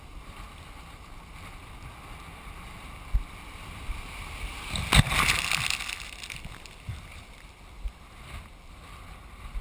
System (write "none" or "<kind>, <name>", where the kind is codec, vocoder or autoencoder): none